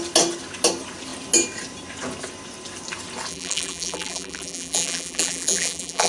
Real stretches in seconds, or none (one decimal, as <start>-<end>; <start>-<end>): 0.0-3.3

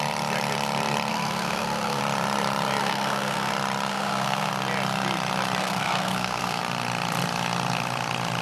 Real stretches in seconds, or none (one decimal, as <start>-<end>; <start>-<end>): 0.0-1.1; 2.0-2.8; 3.5-3.9; 4.5-5.6; 6.6-8.4

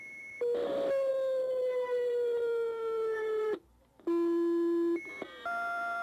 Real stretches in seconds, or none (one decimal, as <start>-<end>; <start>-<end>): 0.0-1.1; 3.9-6.0

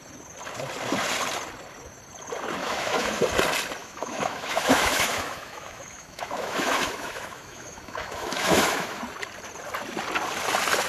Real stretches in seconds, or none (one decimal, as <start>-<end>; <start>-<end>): 0.0-2.6; 3.2-3.8; 9.0-10.9

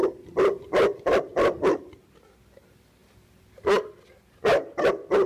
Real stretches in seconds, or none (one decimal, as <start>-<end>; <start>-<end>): 0.0-3.0; 4.4-5.3

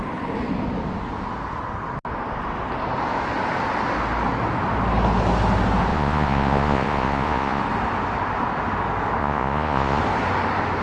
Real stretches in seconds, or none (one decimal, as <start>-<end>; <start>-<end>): 0.0-5.9; 7.6-9.2; 10.0-10.8

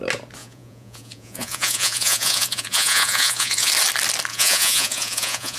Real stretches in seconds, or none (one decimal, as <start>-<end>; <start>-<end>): 0.0-0.4; 3.7-4.3

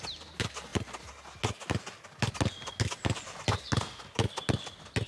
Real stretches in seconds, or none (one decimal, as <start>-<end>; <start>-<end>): 0.0-5.1